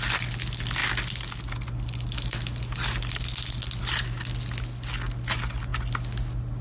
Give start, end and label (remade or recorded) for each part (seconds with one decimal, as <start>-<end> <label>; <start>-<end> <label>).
0.0-6.6 recorded